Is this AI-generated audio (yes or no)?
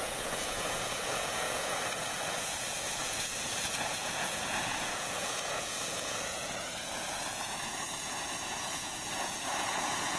yes